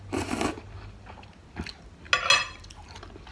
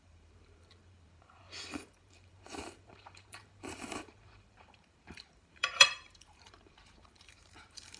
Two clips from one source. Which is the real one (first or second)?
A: first